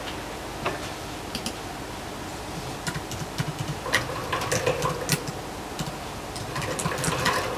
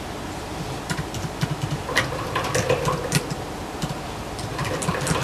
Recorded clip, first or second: first